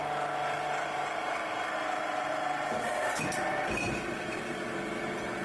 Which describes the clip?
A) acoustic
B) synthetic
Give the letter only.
A